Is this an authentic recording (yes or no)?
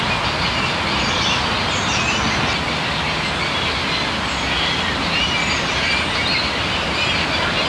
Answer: yes